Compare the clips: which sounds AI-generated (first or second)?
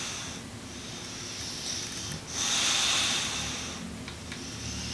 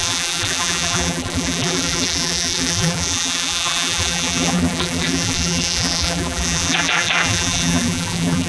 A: second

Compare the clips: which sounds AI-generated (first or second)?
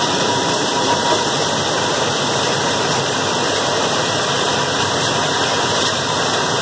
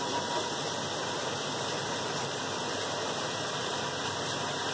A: first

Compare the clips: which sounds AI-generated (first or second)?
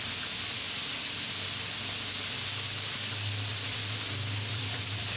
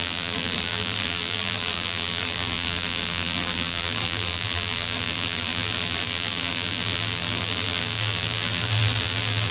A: second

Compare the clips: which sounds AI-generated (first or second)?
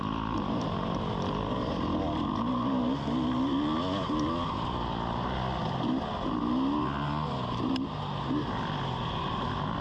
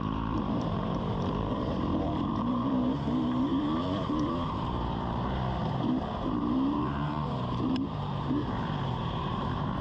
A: second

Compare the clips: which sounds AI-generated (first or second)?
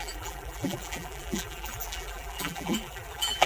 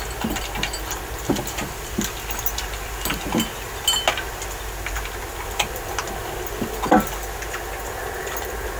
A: first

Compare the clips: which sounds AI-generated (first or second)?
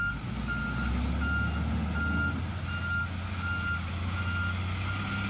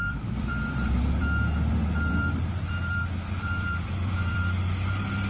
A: second